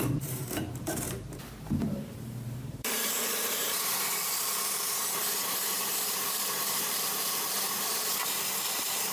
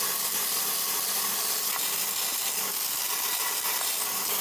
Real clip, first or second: second